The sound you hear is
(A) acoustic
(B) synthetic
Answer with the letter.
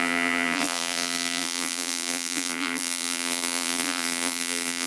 B